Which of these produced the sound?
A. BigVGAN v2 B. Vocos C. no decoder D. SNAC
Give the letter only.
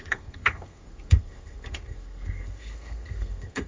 D